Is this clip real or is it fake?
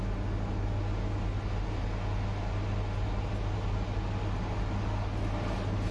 real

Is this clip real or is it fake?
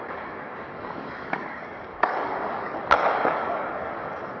fake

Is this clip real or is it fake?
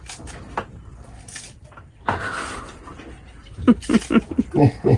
real